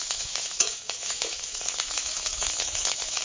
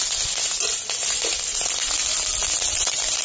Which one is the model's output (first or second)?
first